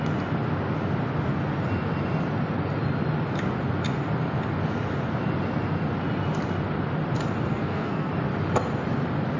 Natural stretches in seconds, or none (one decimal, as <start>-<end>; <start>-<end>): 0.0-7.5; 8.1-9.4

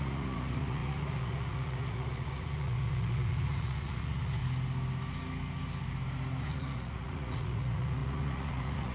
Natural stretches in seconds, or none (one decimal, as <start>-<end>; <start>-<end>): 4.4-6.4

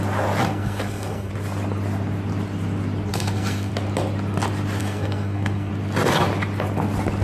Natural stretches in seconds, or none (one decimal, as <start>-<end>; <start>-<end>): 0.0-0.5; 1.3-3.1; 3.7-4.8; 5.7-7.2

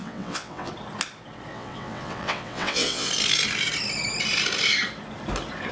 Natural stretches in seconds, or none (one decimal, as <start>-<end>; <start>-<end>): 0.7-1.5; 3.1-5.7